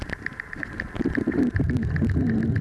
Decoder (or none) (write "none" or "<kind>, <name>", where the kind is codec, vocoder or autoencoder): none